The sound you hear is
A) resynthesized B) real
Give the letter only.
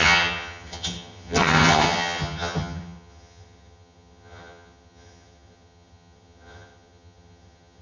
A